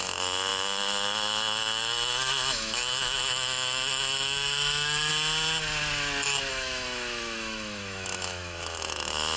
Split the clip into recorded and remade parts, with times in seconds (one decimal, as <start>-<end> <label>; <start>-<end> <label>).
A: 0.0-5.1 remade; 5.1-6.5 recorded; 6.5-9.4 remade